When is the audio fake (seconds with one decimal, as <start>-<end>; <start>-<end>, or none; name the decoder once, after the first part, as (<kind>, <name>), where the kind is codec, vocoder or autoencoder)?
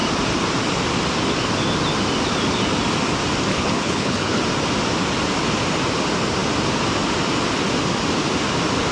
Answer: 3.5-4.4 (codec, HILCodec)